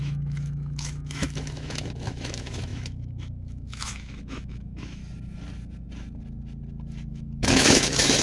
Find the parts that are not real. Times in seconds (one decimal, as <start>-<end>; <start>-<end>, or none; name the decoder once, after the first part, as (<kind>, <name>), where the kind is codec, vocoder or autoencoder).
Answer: 0.0-5.0 (autoencoder, DAC-VAE); 7.1-8.2